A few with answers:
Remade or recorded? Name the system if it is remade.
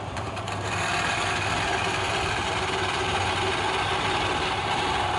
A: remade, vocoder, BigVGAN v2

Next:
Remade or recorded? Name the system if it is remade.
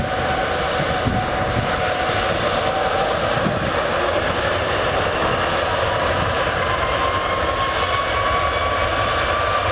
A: recorded